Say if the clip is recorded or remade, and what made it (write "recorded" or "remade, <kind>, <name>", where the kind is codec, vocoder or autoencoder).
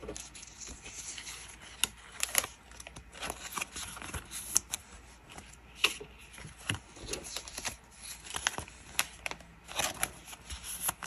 recorded